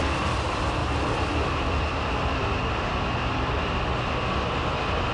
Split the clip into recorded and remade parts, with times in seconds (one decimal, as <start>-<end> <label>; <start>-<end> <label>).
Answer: 0.0-5.1 recorded